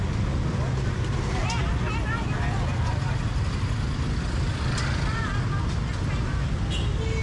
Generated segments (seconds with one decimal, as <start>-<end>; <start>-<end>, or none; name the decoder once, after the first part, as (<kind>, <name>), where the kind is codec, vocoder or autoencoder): none

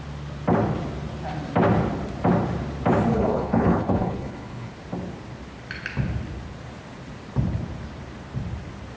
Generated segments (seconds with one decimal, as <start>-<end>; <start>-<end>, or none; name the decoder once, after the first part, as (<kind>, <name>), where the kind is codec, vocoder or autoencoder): 3.1-4.7 (codec, HILCodec)

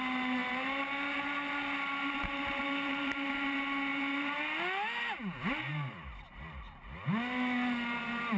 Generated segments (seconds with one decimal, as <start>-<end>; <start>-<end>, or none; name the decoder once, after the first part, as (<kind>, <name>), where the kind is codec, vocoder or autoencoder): none